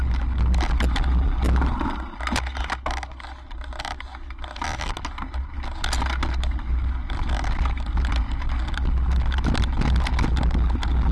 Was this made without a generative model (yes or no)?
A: yes